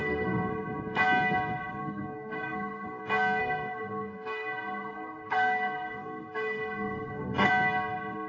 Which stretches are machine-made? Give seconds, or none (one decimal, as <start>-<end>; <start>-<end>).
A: 0.0-0.5; 1.8-3.0; 3.4-7.5